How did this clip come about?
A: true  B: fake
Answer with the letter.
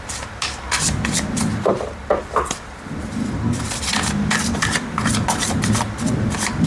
B